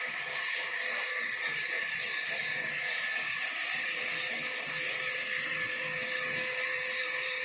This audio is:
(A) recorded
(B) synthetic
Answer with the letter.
B